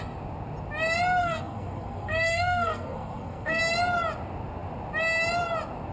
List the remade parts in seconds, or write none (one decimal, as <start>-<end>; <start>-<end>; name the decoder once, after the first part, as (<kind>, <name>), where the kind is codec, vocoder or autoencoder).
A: 1.2-3.6 (codec, SNAC)